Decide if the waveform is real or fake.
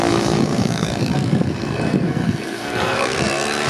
fake